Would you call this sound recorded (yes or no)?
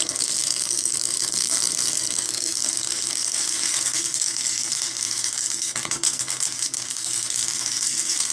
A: no